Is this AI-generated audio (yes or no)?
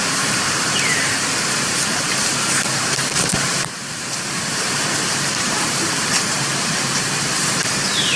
yes